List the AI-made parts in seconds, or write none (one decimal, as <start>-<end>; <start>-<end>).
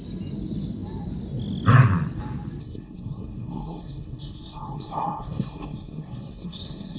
2.6-7.0